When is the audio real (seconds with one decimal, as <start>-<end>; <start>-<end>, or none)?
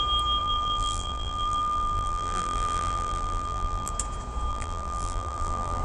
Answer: 0.0-0.4; 3.9-4.5